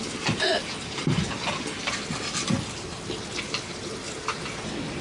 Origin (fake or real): real